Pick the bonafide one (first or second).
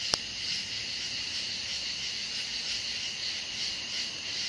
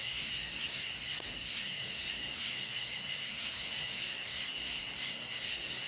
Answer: first